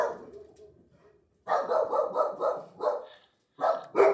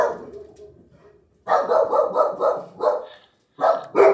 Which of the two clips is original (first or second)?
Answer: second